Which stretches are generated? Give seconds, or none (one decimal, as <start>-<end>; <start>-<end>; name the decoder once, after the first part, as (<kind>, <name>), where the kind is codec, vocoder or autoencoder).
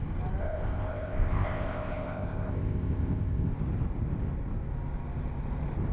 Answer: 0.4-3.5 (codec, ZipCodec)